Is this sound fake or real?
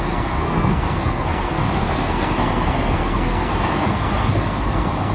fake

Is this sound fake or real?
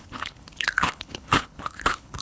fake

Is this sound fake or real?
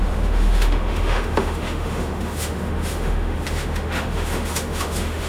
fake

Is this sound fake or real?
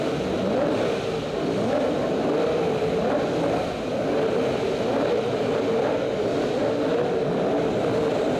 real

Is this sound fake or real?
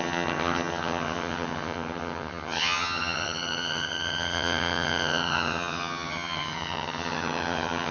fake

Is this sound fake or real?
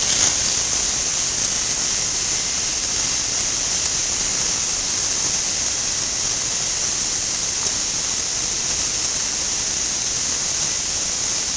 real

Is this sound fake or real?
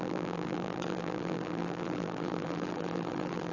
fake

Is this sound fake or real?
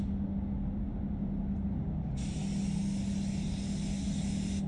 real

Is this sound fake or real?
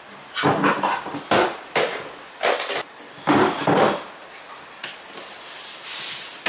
real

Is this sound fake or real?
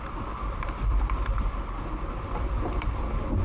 real